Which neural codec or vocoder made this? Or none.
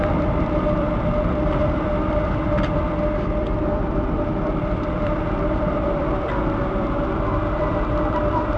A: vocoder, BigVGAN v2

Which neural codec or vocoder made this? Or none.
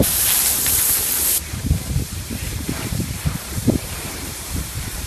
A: vocoder, BigVGAN v2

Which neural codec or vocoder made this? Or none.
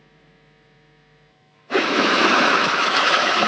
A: autoencoder, DAC-VAE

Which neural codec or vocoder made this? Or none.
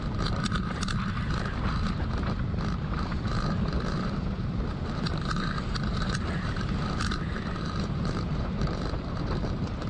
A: vocoder, BigVGAN v2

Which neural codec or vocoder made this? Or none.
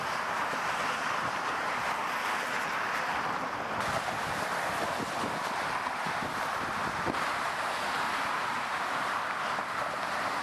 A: vocoder, BigVGAN v2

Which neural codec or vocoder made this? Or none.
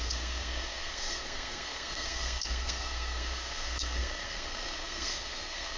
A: codec, SNAC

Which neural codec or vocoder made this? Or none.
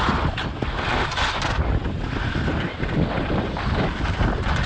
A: none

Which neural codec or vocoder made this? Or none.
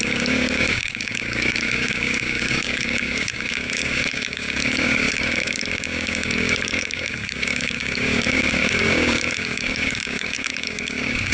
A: codec, DAC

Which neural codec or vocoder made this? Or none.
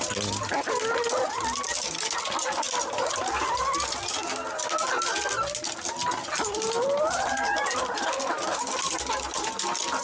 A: none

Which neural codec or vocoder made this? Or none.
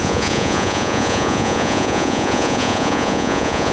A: vocoder, Vocos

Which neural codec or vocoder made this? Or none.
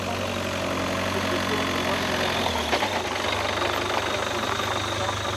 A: none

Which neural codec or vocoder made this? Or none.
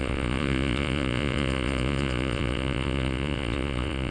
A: vocoder, Vocos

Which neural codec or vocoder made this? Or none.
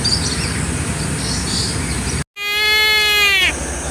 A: none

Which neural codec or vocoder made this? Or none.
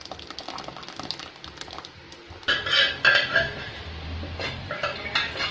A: none